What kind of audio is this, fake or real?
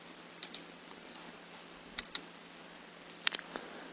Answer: real